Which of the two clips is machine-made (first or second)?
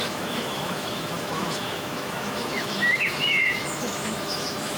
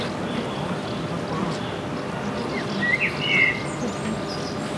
first